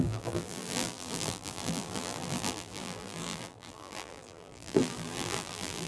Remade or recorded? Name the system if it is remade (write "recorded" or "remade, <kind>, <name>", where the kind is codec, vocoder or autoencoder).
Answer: remade, vocoder, BigVGAN v2